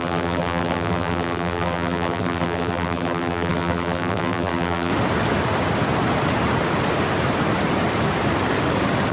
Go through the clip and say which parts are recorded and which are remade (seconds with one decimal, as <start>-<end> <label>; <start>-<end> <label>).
0.0-4.9 remade; 4.9-9.1 recorded